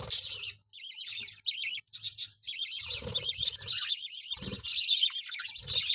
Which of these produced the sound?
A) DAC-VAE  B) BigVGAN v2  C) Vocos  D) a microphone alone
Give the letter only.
D